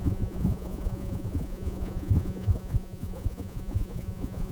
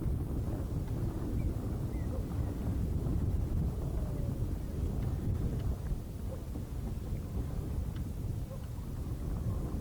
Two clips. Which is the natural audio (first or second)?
second